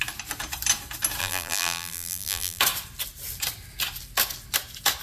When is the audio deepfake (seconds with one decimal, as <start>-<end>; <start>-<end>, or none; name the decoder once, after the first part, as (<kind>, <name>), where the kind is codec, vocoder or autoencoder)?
1.2-2.6 (vocoder, BigVGAN v2)